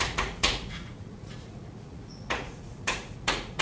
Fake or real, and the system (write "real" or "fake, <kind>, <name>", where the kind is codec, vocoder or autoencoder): fake, vocoder, Vocos